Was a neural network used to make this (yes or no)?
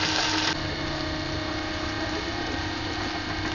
no